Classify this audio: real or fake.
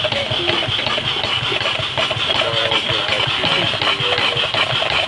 real